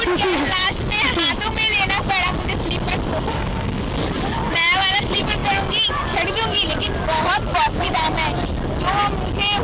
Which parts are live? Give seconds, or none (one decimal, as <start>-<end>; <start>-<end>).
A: 0.0-3.3; 3.8-9.6